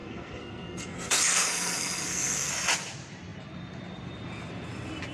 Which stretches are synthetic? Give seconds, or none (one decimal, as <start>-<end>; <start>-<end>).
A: 0.0-2.5